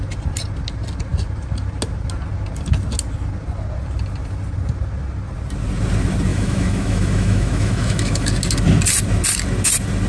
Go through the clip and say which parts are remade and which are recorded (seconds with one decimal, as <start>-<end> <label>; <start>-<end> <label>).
0.0-6.3 recorded; 6.3-8.3 remade; 8.3-10.1 recorded